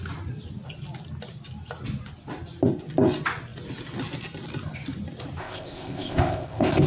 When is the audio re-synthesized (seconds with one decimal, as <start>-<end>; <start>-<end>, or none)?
5.4-6.9